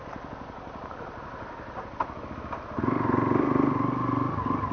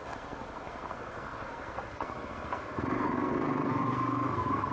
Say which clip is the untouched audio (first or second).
first